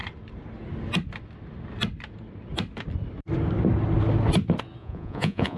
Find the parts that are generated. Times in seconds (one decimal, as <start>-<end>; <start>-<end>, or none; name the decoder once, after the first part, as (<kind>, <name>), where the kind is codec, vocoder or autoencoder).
4.8-5.6 (vocoder, Vocos)